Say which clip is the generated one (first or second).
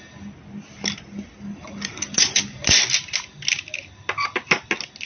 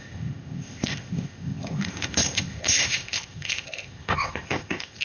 second